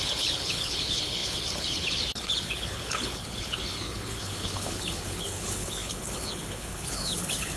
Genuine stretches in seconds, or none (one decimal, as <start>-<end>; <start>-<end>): none

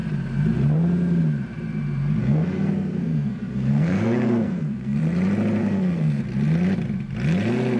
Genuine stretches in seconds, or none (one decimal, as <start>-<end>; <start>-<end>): 0.0-2.2; 5.0-5.6; 6.2-7.8

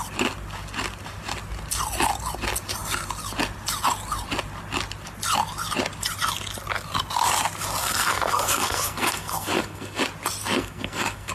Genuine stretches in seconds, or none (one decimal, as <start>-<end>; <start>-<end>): 0.0-7.8; 10.0-10.4

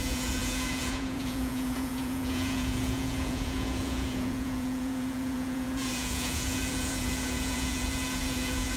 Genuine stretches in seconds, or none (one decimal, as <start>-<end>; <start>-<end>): none

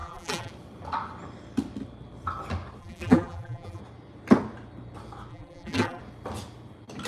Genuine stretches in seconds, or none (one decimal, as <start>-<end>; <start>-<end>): 0.5-2.8; 3.8-5.3; 6.0-7.1

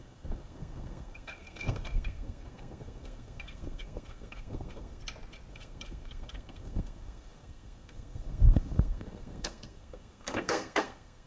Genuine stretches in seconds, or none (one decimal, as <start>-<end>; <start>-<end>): 5.0-5.5

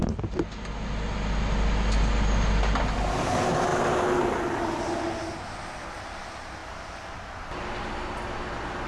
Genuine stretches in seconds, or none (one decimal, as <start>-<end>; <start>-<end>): 0.0-8.9

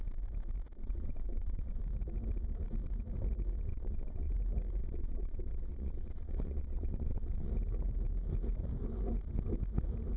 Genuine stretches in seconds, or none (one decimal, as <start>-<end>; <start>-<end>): 0.0-0.8; 1.8-3.7; 4.3-4.8; 7.5-10.2